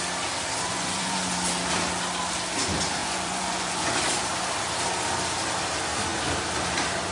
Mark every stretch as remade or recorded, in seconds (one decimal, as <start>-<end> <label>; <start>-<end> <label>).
0.0-0.7 recorded; 0.7-1.3 remade; 1.3-3.0 recorded; 3.0-4.0 remade; 4.0-7.1 recorded

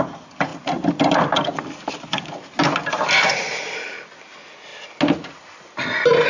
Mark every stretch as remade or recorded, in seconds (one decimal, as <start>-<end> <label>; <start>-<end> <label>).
0.0-6.3 recorded

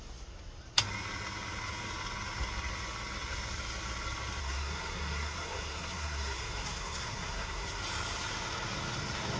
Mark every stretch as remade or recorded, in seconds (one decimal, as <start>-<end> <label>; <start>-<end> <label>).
0.0-4.4 recorded; 4.4-7.8 remade; 7.8-9.4 recorded

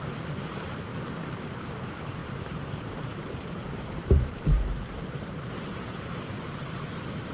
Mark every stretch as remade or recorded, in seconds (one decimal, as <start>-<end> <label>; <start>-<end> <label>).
0.0-0.9 remade; 0.9-1.4 recorded; 1.4-7.3 remade

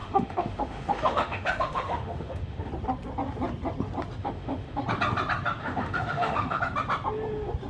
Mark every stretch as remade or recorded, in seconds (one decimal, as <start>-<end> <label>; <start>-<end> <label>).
0.0-2.7 remade; 2.7-4.2 recorded; 4.2-4.8 remade; 4.8-5.6 recorded; 5.6-6.6 remade; 6.6-7.7 recorded

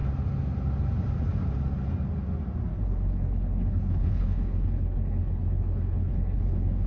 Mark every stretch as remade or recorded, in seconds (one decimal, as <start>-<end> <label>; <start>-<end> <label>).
0.0-2.7 recorded; 2.7-6.9 remade

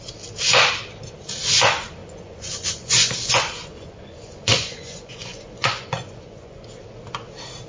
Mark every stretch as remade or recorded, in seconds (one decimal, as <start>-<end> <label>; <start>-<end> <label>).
0.0-2.0 recorded; 2.0-6.6 remade; 6.6-7.7 recorded

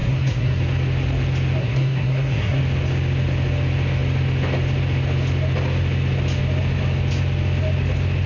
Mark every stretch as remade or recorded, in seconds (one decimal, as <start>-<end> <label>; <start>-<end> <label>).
0.0-0.6 remade; 0.6-1.6 recorded; 1.6-2.6 remade; 2.6-8.3 recorded